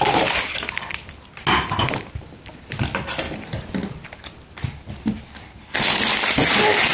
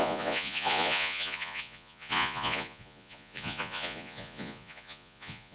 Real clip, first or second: first